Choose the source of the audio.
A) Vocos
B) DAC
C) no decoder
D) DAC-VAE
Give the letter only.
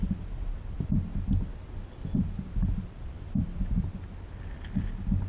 C